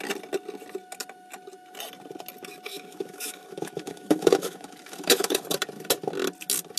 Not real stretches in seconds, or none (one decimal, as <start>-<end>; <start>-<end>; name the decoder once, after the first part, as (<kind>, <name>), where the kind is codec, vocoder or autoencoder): 2.7-5.4 (autoencoder, DAC-VAE)